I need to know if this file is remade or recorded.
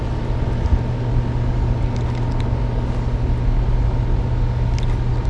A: recorded